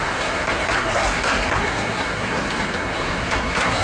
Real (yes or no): no